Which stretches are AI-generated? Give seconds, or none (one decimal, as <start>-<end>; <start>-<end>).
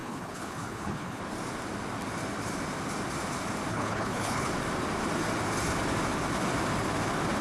0.0-1.2; 3.7-4.5